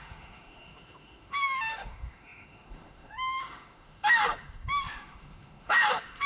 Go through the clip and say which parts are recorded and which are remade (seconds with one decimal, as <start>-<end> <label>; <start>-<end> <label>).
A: 0.0-6.3 remade